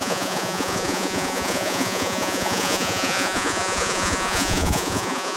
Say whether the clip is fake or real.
fake